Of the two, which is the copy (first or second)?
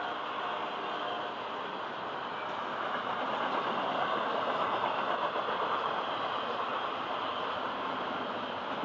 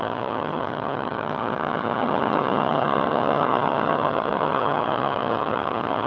second